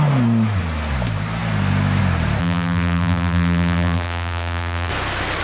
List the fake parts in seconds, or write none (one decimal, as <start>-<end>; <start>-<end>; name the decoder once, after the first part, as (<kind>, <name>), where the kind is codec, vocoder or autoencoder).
2.4-4.9 (vocoder, BigVGAN v2)